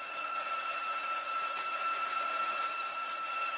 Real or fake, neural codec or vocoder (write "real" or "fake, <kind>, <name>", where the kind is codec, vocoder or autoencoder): fake, vocoder, Vocos